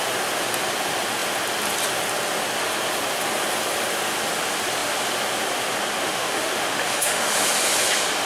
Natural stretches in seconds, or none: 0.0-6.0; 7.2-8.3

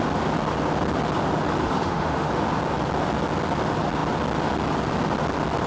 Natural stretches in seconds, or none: 0.0-1.6; 2.3-5.7